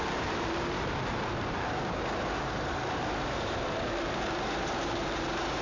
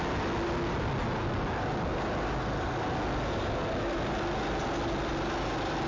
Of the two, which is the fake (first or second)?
first